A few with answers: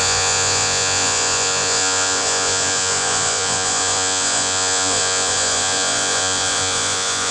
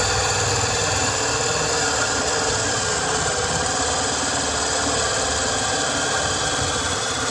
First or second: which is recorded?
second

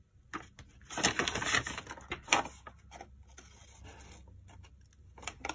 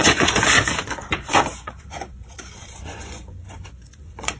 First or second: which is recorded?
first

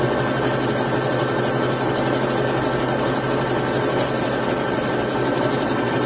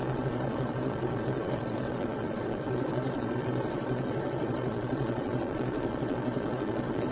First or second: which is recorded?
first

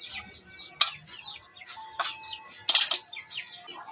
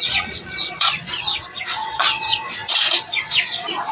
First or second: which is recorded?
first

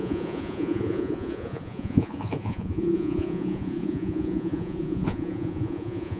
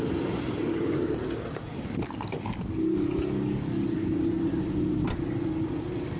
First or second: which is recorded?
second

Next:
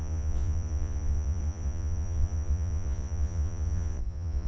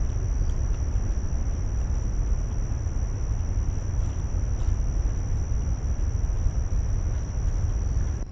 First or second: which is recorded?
second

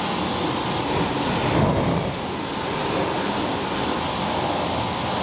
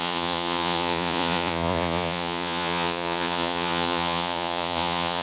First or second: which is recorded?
first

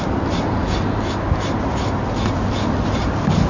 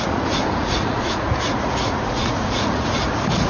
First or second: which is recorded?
first